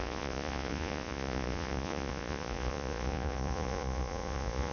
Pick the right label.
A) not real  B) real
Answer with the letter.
A